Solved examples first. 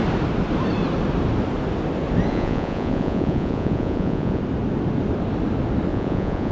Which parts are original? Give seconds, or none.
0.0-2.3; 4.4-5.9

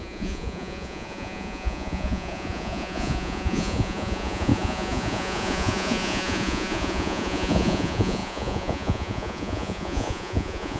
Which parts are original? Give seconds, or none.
none

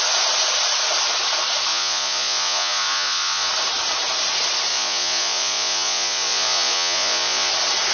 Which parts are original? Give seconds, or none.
0.0-1.7; 3.5-4.7; 7.5-7.9

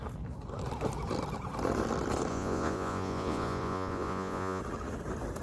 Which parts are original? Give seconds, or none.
0.0-2.3; 4.6-5.4

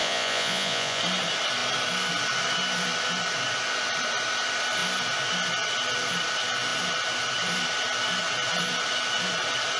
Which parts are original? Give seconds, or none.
1.0-9.8